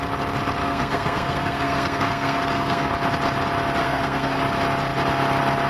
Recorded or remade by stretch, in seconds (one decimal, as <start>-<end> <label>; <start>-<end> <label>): 0.0-0.6 recorded; 0.6-2.9 remade; 2.9-3.8 recorded; 3.8-4.4 remade; 4.4-5.7 recorded